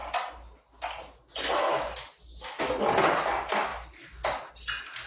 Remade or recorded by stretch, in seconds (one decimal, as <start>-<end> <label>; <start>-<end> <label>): 0.0-3.7 recorded; 3.7-4.5 remade; 4.5-5.1 recorded